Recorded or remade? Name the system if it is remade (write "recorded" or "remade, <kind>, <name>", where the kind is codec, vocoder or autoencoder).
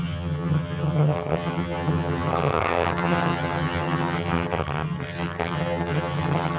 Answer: remade, vocoder, HiFi-GAN